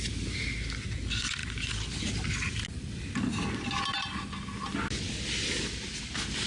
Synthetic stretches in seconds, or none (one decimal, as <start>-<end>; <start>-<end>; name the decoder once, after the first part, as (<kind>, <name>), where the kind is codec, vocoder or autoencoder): none